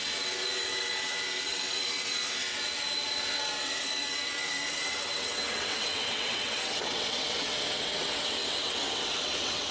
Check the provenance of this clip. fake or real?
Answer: fake